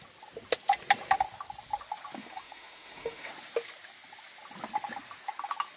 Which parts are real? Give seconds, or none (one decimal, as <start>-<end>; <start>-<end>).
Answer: 0.0-2.2; 3.3-5.8